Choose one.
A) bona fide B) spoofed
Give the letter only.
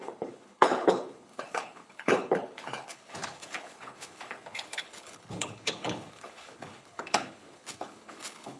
B